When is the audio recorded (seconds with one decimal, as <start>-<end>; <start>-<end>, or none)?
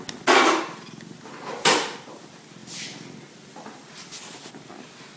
0.0-5.2